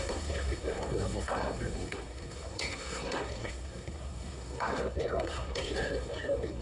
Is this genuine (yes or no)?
no